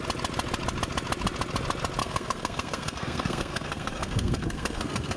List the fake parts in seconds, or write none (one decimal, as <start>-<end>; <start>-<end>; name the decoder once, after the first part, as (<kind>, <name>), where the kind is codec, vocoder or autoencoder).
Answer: 2.0-5.2 (codec, SNAC)